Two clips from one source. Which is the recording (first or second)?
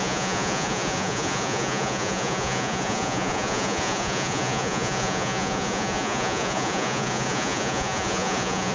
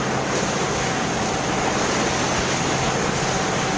second